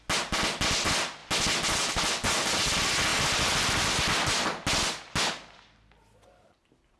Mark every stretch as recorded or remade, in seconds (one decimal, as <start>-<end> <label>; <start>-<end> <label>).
0.0-7.0 recorded